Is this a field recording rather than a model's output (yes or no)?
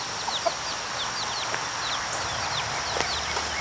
yes